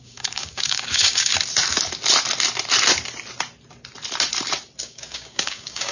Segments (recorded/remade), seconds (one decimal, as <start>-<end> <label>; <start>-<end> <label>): 0.0-1.3 remade; 1.3-4.8 recorded; 4.8-5.9 remade